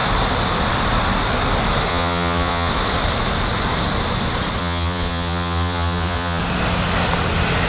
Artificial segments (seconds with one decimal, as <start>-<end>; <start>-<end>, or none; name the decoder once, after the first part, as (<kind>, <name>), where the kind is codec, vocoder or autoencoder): 1.9-2.7 (vocoder, Vocos); 4.6-6.4